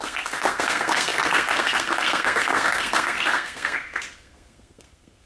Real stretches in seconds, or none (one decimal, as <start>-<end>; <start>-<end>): none